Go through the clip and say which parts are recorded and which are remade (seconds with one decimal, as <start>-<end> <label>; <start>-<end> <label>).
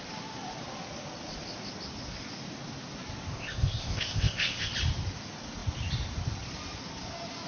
0.0-3.3 recorded; 3.3-4.7 remade; 4.7-7.5 recorded